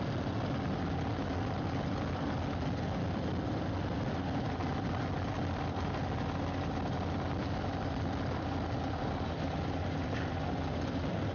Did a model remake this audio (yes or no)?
no